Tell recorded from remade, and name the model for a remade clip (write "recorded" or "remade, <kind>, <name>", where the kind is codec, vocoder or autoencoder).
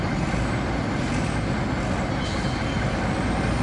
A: recorded